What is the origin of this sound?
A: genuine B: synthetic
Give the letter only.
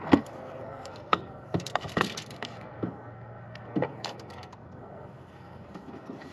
B